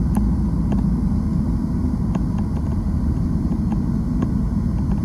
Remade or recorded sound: recorded